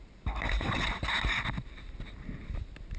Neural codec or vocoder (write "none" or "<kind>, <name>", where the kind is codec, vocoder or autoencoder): none